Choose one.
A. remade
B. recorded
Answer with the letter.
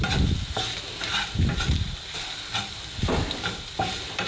B